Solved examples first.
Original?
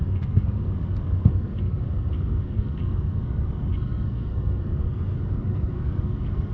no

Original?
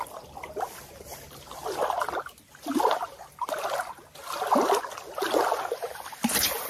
yes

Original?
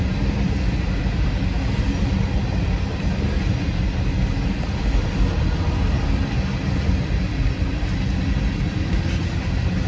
yes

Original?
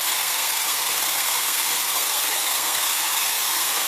no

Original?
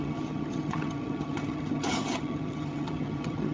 no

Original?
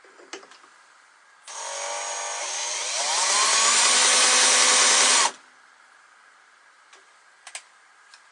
yes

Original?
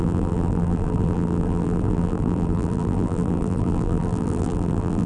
no